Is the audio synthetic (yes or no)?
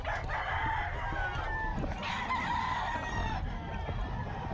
no